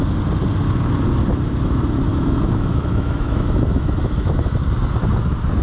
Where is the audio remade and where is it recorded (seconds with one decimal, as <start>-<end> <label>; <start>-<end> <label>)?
0.0-2.1 recorded; 2.1-4.6 remade; 4.6-5.6 recorded